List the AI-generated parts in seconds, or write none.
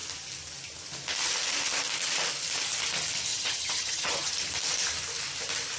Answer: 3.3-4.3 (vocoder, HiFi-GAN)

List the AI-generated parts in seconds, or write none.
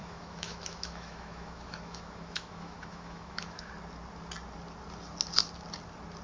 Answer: 0.0-3.7 (autoencoder, DAC-VAE)